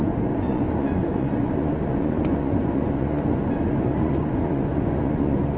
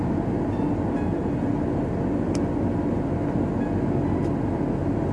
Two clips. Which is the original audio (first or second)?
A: second